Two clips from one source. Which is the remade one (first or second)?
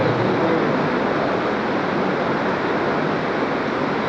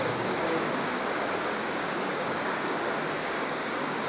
second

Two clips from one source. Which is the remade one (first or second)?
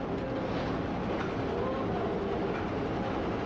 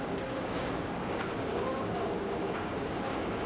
second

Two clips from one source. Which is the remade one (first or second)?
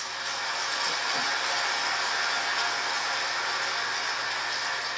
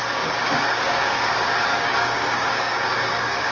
second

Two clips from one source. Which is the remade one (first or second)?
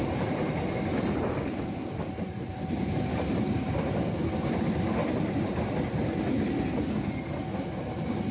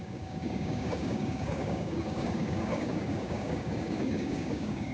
second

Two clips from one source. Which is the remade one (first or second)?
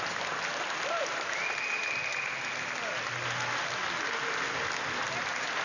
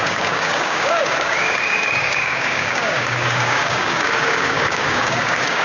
second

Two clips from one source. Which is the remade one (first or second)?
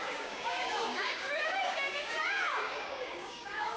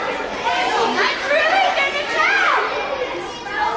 first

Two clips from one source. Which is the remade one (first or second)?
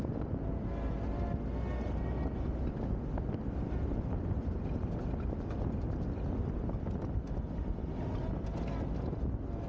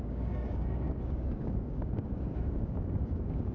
second